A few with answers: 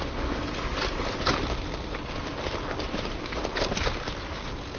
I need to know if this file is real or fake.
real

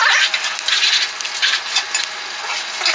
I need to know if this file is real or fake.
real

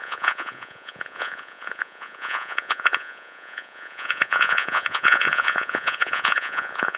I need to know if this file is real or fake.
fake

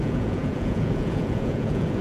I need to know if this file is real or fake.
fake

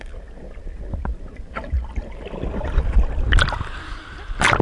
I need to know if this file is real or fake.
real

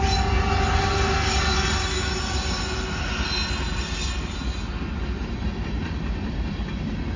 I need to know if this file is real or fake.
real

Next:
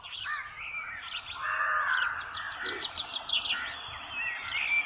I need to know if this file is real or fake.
real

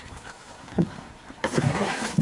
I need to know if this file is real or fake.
fake